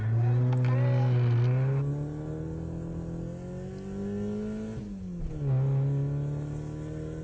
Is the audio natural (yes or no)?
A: yes